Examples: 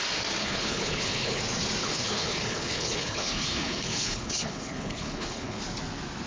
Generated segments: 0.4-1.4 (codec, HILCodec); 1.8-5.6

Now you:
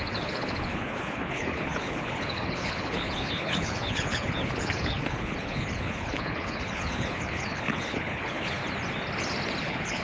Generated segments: 0.0-8.6 (codec, HILCodec); 9.6-10.0

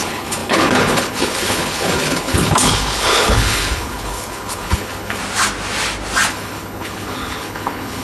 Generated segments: 0.0-5.2 (codec, HILCodec); 6.3-8.0

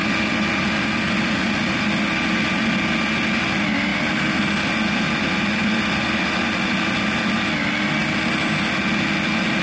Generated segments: none

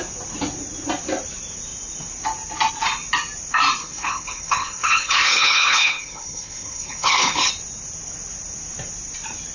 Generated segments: 3.8-7.5 (codec, HILCodec)

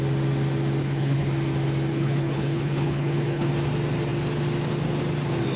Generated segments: 0.8-1.3 (codec, HILCodec); 1.9-3.5

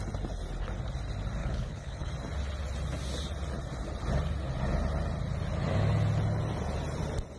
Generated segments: 1.4-2.1 (codec, HILCodec)